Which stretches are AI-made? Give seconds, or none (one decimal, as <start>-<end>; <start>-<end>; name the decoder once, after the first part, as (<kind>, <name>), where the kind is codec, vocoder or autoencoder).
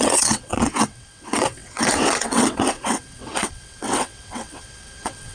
0.0-5.3 (vocoder, WaveNeXt)